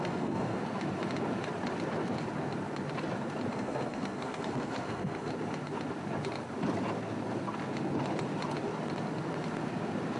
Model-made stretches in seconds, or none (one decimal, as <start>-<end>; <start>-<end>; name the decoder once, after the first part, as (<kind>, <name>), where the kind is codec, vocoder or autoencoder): 0.0-0.6 (codec, SNAC); 3.5-5.3